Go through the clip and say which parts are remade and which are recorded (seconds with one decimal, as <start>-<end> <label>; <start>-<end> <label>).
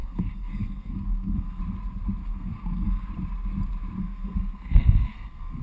0.0-1.6 remade; 1.6-2.2 recorded; 2.2-3.1 remade; 3.1-4.0 recorded; 4.0-5.6 remade